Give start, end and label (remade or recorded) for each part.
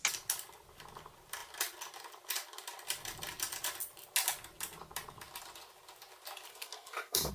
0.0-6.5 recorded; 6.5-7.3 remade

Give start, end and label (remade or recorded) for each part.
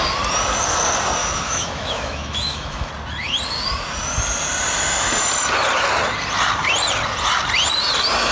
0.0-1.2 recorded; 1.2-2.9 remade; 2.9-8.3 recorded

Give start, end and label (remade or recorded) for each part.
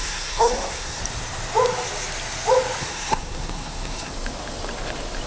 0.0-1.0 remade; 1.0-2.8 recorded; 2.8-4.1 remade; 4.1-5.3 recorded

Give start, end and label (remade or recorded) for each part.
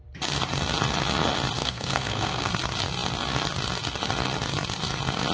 0.0-1.6 recorded; 1.6-2.5 remade; 2.5-5.3 recorded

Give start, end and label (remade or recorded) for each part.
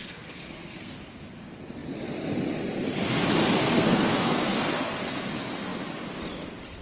0.0-0.9 remade; 0.9-3.6 recorded; 3.6-5.3 remade; 5.3-6.8 recorded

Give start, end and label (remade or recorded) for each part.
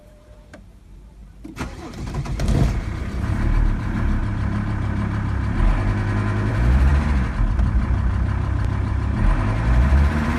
0.0-4.2 remade; 4.2-6.5 recorded; 6.5-6.9 remade; 6.9-9.7 recorded; 9.7-10.4 remade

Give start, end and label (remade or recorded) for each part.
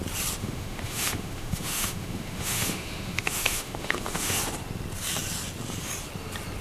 0.0-0.4 recorded; 0.4-4.4 remade; 4.4-6.6 recorded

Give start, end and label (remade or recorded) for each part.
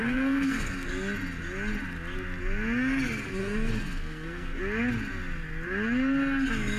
0.0-0.9 remade; 0.9-3.4 recorded; 3.4-4.6 remade; 4.6-6.8 recorded